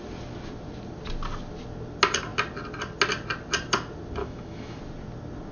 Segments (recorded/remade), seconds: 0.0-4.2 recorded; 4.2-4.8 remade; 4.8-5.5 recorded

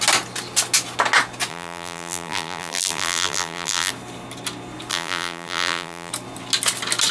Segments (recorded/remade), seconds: 0.0-1.5 recorded; 1.5-3.9 remade; 3.9-4.9 recorded; 4.9-6.1 remade; 6.1-7.1 recorded

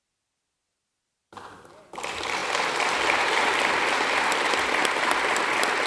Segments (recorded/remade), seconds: 0.0-5.9 recorded

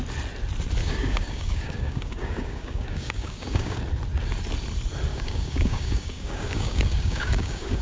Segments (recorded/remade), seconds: 0.0-0.8 recorded; 0.8-3.8 remade; 3.8-5.1 recorded; 5.1-7.8 remade

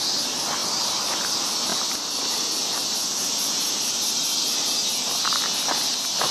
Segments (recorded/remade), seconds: 0.0-6.3 remade

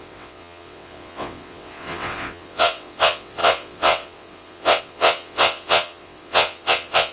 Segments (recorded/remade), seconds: 0.0-7.1 remade

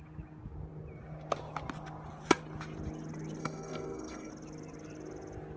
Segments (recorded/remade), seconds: 0.0-3.4 recorded; 3.4-4.3 remade; 4.3-5.6 recorded